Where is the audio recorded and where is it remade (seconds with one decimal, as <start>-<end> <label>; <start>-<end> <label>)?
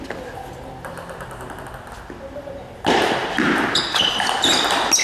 0.0-5.0 recorded